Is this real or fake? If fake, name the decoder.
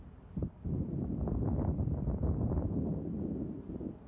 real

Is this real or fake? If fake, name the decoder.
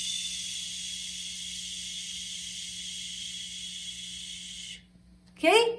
real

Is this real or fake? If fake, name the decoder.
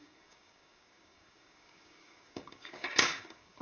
fake, codec, DAC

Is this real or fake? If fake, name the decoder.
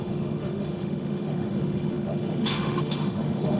fake, autoencoder, DAC-VAE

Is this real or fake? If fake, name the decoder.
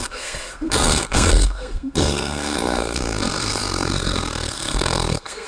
fake, codec, SNAC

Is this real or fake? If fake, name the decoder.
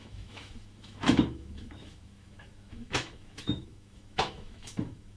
fake, autoencoder, DAC-VAE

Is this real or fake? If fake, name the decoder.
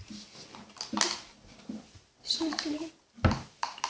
real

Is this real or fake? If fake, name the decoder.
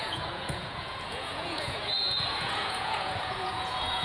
fake, vocoder, Vocos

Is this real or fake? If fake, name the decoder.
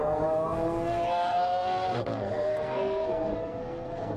fake, codec, SNAC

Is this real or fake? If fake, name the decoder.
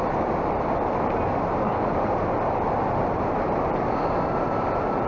real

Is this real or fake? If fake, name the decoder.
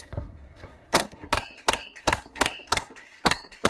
fake, codec, SNAC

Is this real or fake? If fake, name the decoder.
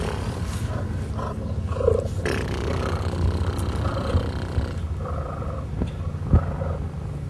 real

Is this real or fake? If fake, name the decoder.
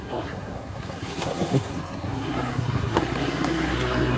fake, codec, SNAC